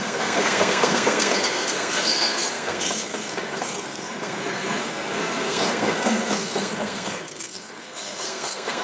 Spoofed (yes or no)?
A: yes